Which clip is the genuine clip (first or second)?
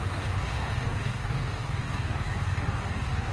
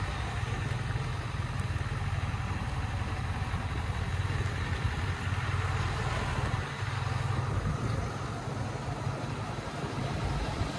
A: second